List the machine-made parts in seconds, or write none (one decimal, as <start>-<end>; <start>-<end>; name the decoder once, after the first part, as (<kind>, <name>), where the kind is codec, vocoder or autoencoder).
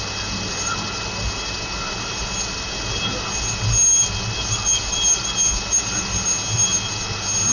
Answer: none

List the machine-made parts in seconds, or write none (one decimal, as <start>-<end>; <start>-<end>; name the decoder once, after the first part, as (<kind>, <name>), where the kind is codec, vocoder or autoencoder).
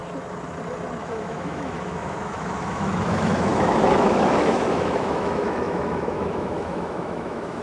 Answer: 1.0-7.6 (autoencoder, DAC-VAE)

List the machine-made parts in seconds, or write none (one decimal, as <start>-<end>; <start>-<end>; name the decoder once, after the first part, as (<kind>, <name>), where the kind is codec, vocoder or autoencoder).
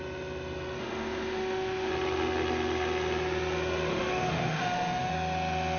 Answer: 0.8-1.9 (autoencoder, DAC-VAE); 3.9-5.1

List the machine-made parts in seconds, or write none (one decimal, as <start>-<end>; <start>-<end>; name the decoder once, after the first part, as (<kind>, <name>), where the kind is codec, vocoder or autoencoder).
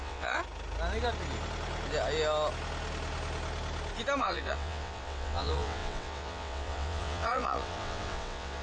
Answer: 0.0-0.4 (vocoder, WaveNeXt); 4.2-8.6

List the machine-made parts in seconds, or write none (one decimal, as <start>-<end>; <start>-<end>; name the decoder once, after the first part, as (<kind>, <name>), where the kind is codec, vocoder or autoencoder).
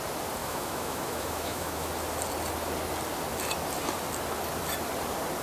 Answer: 0.4-1.9 (autoencoder, DAC-VAE)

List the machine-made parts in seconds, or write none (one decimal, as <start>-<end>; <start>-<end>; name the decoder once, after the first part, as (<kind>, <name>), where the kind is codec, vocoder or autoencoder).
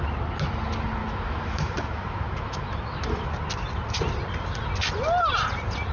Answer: 1.0-3.3 (autoencoder, DAC-VAE)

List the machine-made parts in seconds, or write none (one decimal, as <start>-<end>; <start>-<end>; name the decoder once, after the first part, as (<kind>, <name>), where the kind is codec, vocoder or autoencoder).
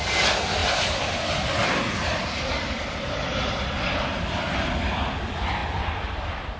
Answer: 0.6-4.6 (vocoder, BigVGAN v2)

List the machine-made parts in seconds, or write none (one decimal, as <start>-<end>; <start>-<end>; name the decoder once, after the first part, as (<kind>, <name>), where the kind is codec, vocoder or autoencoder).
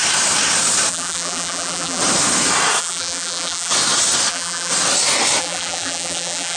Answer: 0.9-2.0 (vocoder, BigVGAN v2); 2.8-3.7; 4.3-4.7; 5.4-6.6